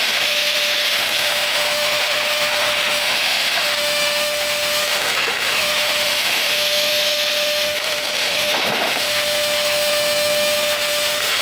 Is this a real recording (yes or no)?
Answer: no